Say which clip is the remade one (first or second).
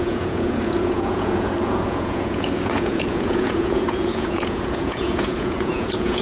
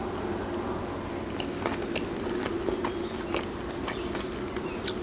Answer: first